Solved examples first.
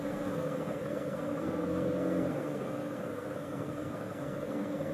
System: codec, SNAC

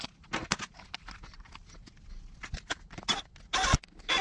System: none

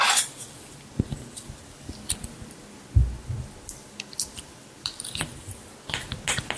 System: none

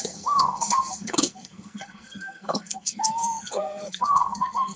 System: codec, SNAC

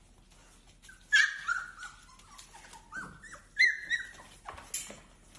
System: none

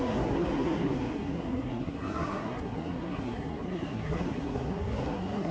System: codec, SNAC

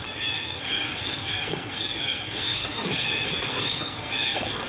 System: codec, SNAC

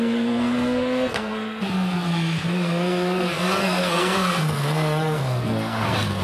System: codec, SNAC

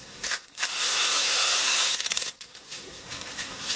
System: codec, SNAC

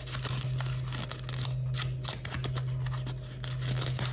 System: none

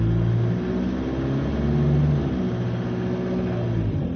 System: none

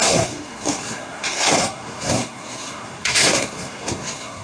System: codec, SNAC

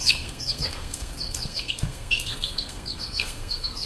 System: codec, SNAC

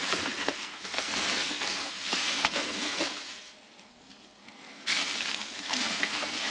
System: codec, SNAC